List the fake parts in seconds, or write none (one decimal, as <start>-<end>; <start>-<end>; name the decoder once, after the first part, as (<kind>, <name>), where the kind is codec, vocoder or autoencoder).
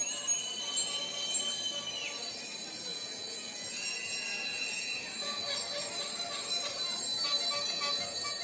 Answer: 2.9-5.5 (vocoder, Vocos)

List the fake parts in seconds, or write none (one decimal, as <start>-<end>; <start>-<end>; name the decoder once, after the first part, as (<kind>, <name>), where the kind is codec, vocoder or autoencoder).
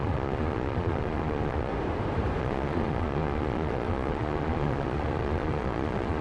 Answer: 0.0-1.7 (vocoder, Vocos); 2.4-6.2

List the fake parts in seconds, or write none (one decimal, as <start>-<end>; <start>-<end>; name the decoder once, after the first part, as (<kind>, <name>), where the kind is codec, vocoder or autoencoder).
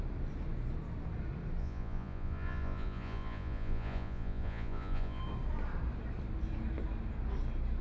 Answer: 1.6-5.2 (vocoder, Vocos)